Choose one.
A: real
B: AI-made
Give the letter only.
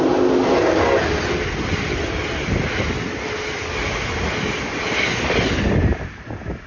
A